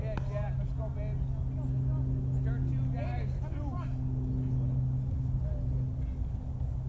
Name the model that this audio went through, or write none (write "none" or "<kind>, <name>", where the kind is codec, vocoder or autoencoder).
none